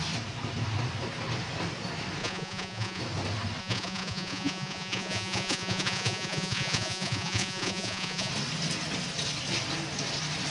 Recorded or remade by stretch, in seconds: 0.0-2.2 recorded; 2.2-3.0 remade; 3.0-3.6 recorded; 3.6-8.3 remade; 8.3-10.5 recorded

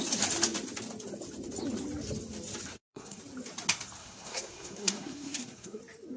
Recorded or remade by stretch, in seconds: 0.0-2.7 recorded; 2.7-3.2 remade; 3.2-4.0 recorded; 4.0-5.8 remade; 5.8-6.2 recorded

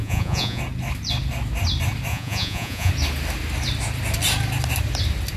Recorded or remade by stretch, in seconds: 0.0-0.6 remade; 0.6-2.1 recorded; 2.1-2.9 remade; 2.9-5.4 recorded